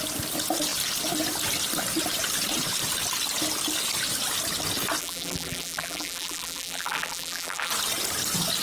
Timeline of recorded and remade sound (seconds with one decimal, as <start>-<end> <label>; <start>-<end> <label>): 0.0-5.0 recorded; 5.0-7.7 remade; 7.7-8.6 recorded